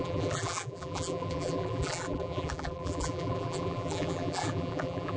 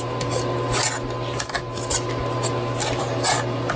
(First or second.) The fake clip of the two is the first